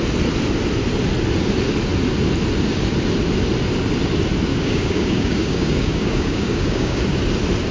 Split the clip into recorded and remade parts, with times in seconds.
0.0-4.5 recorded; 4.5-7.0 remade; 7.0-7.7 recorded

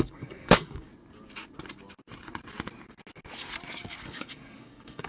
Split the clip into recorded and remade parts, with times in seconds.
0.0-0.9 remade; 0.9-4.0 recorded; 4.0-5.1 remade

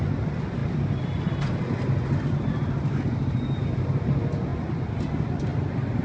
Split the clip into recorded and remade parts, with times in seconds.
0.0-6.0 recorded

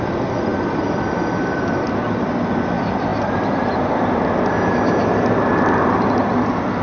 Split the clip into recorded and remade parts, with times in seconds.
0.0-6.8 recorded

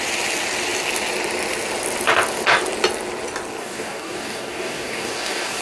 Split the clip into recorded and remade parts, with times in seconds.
0.0-3.6 recorded; 3.6-5.6 remade

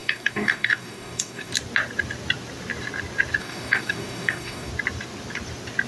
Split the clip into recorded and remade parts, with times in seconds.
0.0-1.5 remade; 1.5-3.4 recorded; 3.4-4.7 remade; 4.7-5.9 recorded

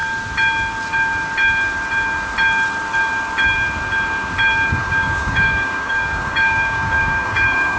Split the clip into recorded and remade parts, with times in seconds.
0.0-4.7 recorded; 4.7-7.8 remade

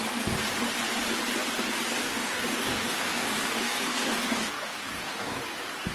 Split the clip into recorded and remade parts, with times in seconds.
0.0-1.9 recorded; 1.9-5.4 remade; 5.4-5.9 recorded